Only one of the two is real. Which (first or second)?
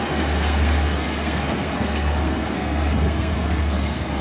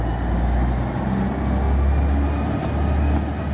second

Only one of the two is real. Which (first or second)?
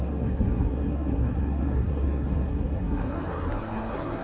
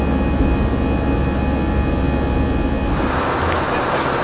second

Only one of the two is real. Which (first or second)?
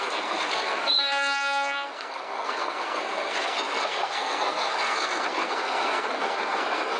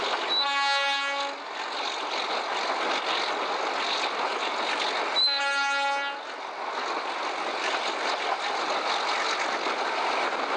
second